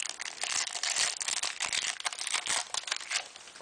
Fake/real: real